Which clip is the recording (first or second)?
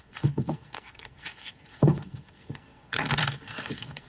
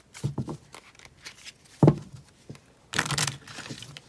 second